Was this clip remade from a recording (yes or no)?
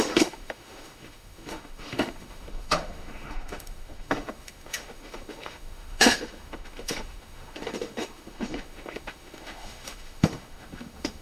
yes